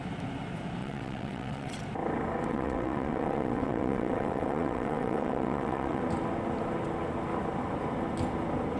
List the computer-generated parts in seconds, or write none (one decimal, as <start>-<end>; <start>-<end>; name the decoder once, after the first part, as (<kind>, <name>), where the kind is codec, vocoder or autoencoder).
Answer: 0.8-1.8 (vocoder, WaveNeXt); 2.5-6.0